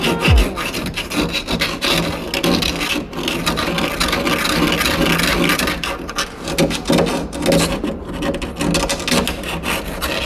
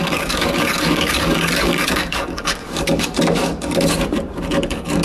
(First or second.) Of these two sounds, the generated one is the second